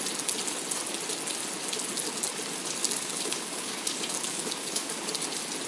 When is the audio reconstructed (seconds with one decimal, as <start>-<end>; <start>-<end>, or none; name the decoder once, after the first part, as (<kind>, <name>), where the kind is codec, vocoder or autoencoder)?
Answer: 2.8-5.1 (codec, DAC)